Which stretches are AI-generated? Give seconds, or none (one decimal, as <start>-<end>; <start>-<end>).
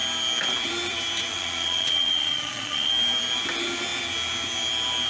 1.3-2.9